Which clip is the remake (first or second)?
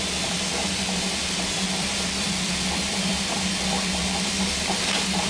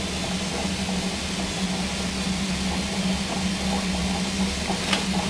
first